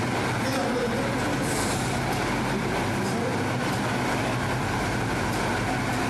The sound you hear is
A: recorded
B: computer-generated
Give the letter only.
A